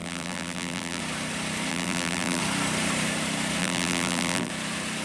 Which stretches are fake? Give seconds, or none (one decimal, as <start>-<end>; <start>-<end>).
0.0-1.0; 1.7-2.4; 3.6-4.5